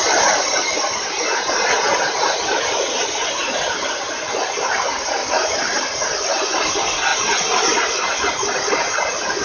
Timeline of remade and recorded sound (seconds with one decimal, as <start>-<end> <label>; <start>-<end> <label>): 0.0-9.4 remade